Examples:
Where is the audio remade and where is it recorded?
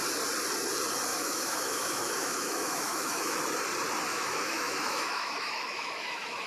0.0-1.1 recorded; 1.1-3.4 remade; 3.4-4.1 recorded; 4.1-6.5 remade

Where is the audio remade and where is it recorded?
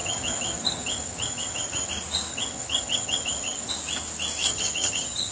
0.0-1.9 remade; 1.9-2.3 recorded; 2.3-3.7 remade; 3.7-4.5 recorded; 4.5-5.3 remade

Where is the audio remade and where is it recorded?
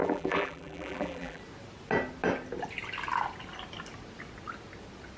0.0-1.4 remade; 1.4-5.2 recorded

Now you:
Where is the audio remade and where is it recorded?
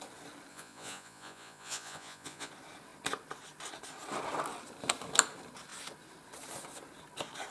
0.0-0.5 recorded; 0.5-2.5 remade; 2.5-7.5 recorded